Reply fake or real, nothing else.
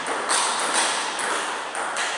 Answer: real